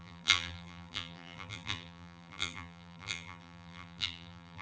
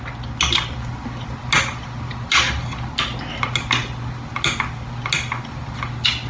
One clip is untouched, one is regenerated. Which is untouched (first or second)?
second